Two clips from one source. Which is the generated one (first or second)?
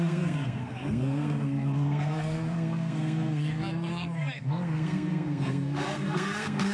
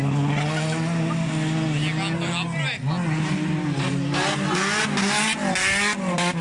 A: first